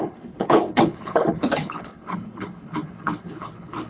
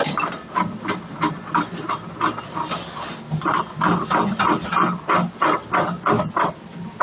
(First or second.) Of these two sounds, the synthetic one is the first